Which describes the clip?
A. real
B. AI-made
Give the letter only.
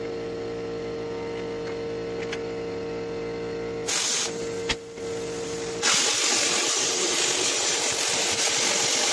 A